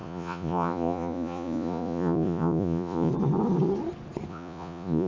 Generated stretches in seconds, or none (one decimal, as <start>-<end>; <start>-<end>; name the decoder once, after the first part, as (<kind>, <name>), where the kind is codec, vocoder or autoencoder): 0.0-3.1 (vocoder, Vocos); 4.3-5.1